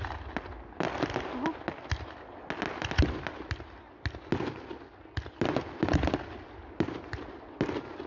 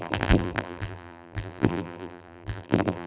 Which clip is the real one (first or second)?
first